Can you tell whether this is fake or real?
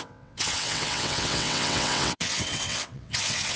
fake